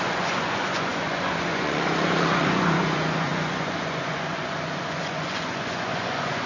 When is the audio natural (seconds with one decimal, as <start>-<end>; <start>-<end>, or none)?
none